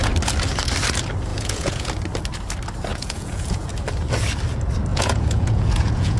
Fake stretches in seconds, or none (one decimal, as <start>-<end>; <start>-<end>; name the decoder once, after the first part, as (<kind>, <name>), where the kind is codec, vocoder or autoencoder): 1.3-1.9 (vocoder, Vocos); 2.9-3.7; 4.9-6.2